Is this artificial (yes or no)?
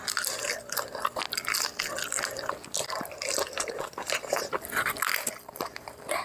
no